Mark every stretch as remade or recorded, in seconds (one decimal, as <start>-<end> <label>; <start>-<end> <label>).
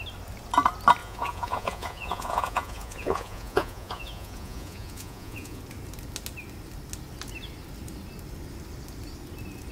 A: 0.0-1.0 recorded; 1.0-5.6 remade; 5.6-9.7 recorded